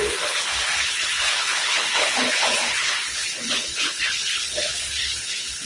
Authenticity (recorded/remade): remade